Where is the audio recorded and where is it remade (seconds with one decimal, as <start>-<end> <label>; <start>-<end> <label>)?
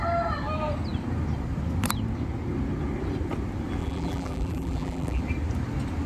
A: 0.0-3.8 recorded; 3.8-5.2 remade; 5.2-6.1 recorded